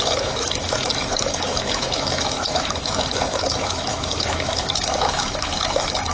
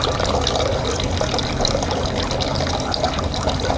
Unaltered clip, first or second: second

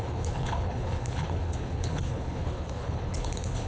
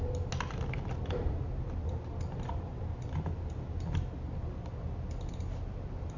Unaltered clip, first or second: second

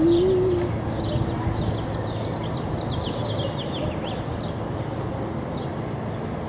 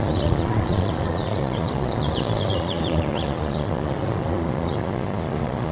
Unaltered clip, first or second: first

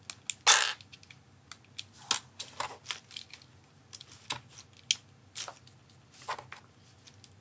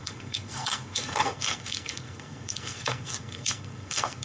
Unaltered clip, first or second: first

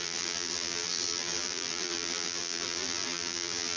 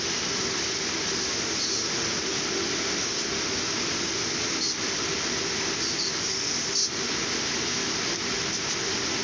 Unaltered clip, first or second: second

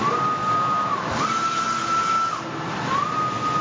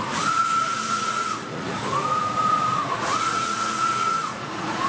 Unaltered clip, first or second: first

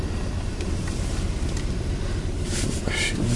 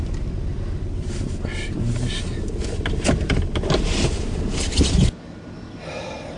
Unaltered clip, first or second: second